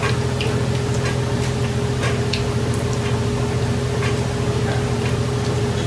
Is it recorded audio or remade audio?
recorded